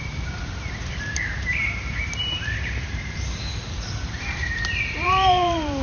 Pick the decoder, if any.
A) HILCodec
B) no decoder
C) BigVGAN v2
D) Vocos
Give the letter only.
C